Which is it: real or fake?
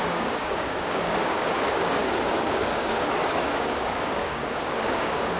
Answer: fake